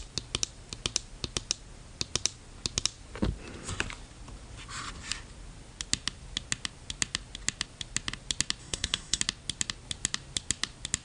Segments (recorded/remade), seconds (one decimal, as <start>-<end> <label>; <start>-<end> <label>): 0.0-8.6 recorded; 8.6-9.2 remade; 9.2-11.0 recorded